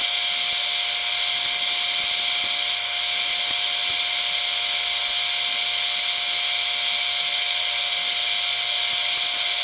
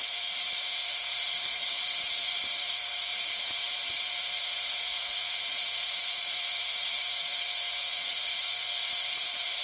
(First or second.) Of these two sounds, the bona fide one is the first